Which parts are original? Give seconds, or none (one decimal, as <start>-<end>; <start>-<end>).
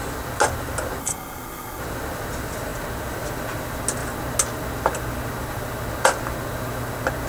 0.0-1.0; 1.8-7.3